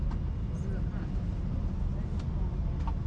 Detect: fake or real real